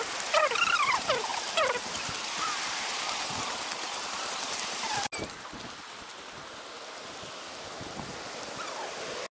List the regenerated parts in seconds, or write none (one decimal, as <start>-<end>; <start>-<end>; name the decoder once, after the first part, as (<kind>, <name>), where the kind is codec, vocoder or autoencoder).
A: none